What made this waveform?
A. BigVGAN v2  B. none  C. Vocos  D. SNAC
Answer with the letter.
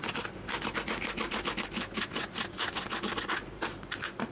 B